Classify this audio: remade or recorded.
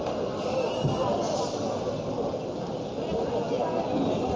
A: recorded